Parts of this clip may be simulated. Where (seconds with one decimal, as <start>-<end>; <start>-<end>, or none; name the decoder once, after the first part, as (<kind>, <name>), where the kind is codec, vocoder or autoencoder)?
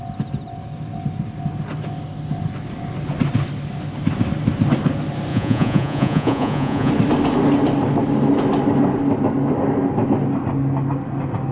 5.3-6.9 (vocoder, Vocos)